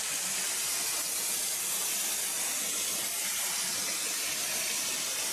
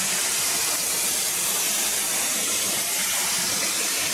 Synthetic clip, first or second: second